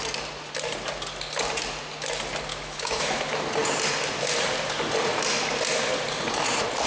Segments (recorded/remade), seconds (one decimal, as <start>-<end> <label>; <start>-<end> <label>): 0.0-2.5 recorded; 2.5-3.2 remade; 3.2-6.9 recorded

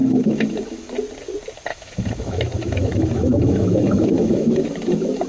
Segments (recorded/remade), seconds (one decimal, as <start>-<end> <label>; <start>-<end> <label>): 0.0-0.9 remade; 0.9-1.7 recorded; 1.7-5.3 remade